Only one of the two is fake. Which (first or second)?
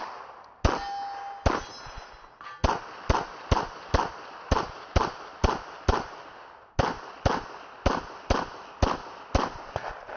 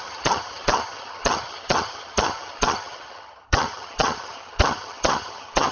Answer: second